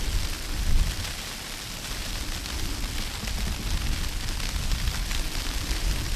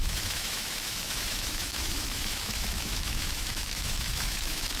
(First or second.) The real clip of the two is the first